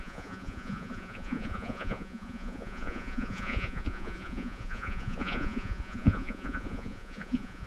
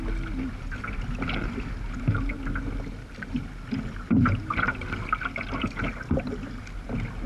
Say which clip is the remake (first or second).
first